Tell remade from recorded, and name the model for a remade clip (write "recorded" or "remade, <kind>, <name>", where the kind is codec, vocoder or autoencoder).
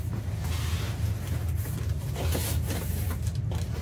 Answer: recorded